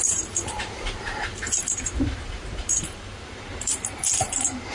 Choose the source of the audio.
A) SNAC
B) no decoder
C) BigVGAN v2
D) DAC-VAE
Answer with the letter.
C